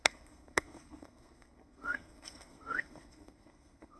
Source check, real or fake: fake